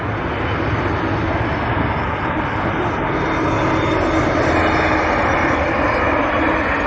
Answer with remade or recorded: recorded